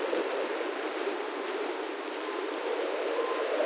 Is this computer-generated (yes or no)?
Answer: yes